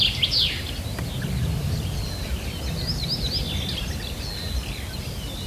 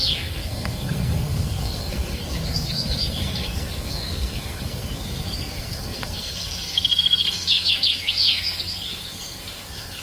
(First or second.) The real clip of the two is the first